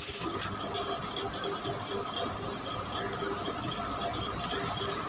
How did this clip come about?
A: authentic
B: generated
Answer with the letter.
A